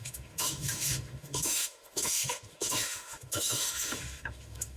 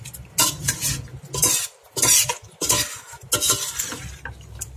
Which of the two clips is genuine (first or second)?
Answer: second